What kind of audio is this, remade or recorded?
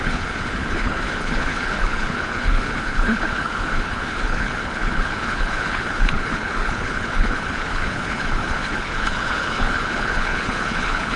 remade